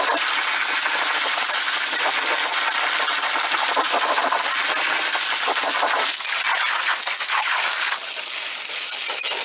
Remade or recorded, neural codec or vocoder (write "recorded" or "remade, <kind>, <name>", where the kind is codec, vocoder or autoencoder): recorded